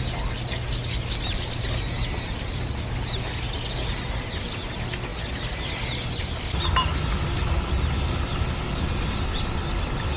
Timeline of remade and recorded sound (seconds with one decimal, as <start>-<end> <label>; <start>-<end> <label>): 0.0-10.2 recorded